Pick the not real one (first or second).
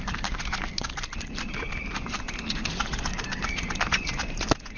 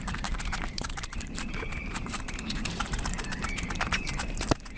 second